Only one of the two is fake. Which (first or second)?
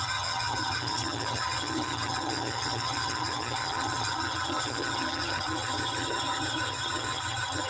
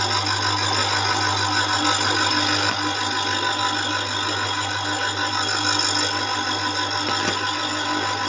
first